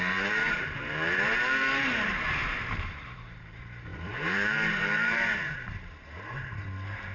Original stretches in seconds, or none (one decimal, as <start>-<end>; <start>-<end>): none